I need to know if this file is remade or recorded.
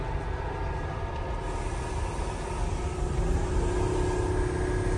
recorded